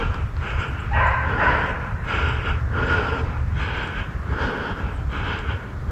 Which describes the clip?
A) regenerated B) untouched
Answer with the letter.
B